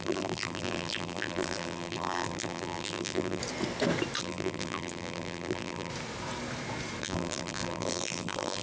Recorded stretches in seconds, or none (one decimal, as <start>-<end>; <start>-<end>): 3.4-4.2; 5.9-7.0